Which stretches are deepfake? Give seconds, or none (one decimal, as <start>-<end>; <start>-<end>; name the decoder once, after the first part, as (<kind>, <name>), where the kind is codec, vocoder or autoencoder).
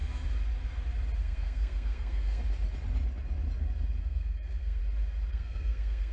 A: 1.2-2.4 (codec, SNAC); 4.0-4.8; 5.3-6.1